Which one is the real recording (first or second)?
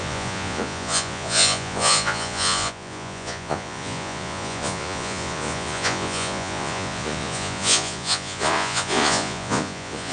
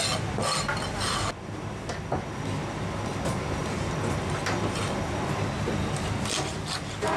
second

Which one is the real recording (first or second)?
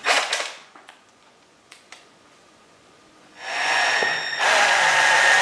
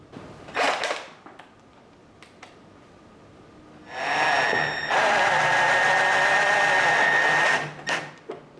second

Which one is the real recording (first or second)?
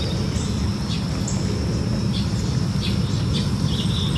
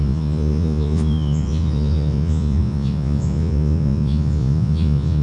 first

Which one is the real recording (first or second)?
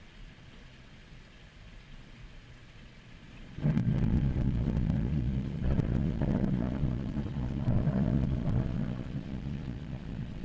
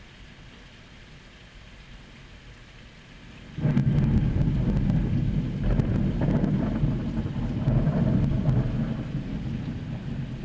second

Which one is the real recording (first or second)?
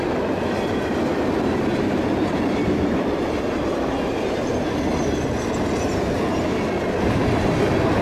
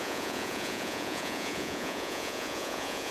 first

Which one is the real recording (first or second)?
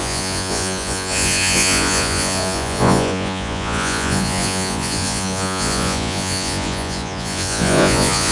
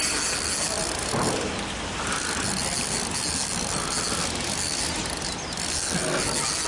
second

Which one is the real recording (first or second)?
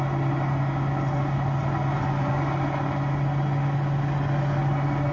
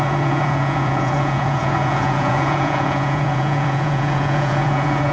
first